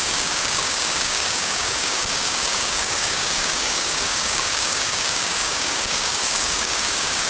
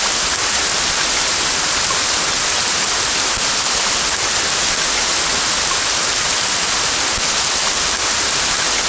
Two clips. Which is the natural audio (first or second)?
second